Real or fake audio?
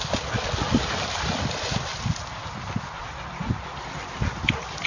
real